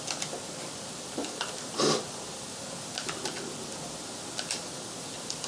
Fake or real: real